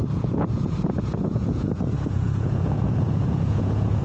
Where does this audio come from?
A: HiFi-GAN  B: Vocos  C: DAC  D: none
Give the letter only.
B